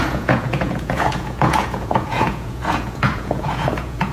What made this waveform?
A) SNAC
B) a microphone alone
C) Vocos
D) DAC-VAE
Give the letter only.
C